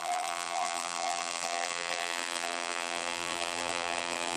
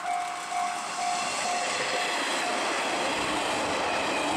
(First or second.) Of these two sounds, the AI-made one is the first